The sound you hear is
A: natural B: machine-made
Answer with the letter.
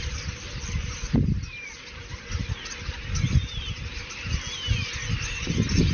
A